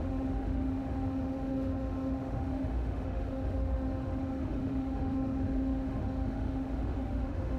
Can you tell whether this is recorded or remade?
remade